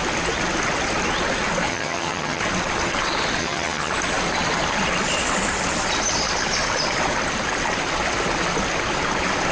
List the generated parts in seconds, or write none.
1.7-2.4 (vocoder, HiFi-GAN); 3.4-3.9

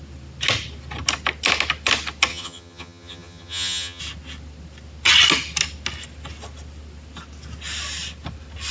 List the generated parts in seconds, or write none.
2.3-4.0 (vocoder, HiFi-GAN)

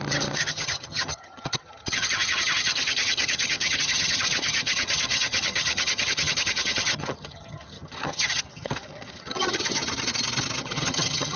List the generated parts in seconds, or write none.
0.0-9.8 (vocoder, HiFi-GAN); 10.6-11.4

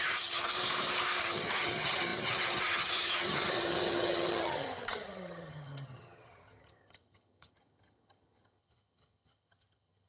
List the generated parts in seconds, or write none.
0.0-0.5 (vocoder, HiFi-GAN); 1.2-10.1

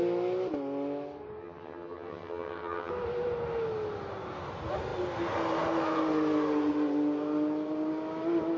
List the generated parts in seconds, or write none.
1.4-2.9 (vocoder, HiFi-GAN)

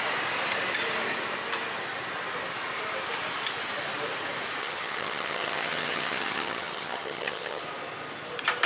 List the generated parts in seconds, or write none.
4.6-7.6 (vocoder, HiFi-GAN)